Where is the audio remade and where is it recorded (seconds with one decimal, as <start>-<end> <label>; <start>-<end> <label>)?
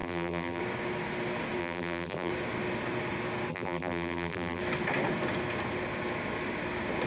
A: 0.0-0.6 remade; 0.6-1.6 recorded; 1.6-2.3 remade; 2.3-3.5 recorded; 3.5-4.6 remade; 4.6-7.1 recorded